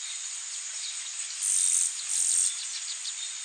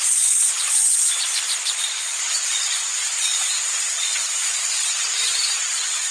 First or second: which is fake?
second